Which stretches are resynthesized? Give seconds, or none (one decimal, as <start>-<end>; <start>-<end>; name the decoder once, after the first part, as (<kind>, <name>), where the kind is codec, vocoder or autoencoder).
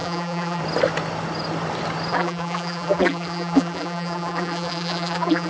0.0-0.6 (vocoder, BigVGAN v2); 2.1-5.5